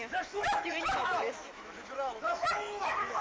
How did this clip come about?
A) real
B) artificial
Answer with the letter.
B